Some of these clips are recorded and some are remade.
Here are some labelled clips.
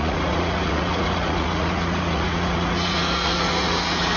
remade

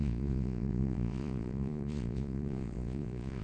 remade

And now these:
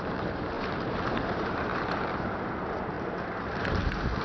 remade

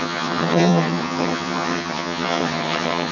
remade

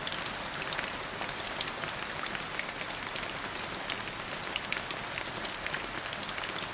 recorded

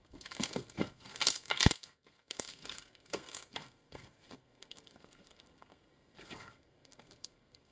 remade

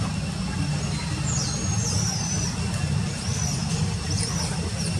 recorded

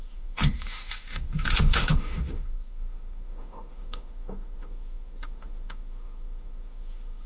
remade